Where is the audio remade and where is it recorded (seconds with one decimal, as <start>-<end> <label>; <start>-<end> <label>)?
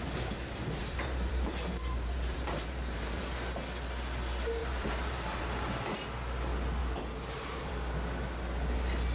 0.0-0.8 recorded; 0.8-3.2 remade; 3.2-4.6 recorded; 4.6-5.4 remade; 5.4-6.8 recorded; 6.8-7.7 remade; 7.7-9.1 recorded